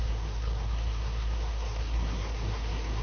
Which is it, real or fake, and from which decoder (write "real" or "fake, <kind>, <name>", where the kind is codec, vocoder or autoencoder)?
fake, codec, SNAC